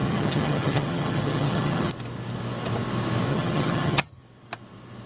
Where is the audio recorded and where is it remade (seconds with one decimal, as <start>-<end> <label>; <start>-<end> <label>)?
0.0-1.9 remade; 1.9-3.3 recorded; 3.3-4.2 remade; 4.2-5.1 recorded